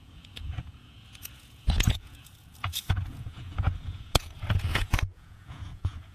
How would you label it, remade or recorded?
remade